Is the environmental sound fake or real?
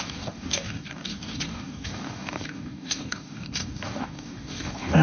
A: fake